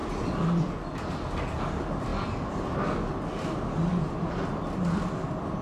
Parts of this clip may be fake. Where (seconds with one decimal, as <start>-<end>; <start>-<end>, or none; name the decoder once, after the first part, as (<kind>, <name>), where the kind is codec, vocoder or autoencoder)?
none